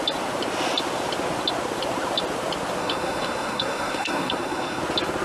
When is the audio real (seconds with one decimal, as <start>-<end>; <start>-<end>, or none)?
0.0-2.8; 4.8-5.2